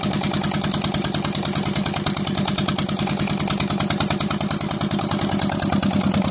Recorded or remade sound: recorded